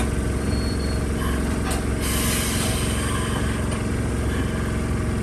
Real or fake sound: real